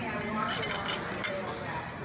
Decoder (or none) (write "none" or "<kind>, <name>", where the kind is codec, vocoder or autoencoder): none